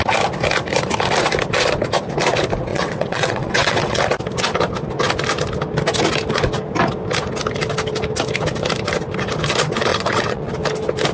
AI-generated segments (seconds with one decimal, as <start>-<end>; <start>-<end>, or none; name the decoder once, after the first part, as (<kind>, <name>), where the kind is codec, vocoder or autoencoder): 2.7-4.0 (vocoder, WaveNeXt); 9.9-10.5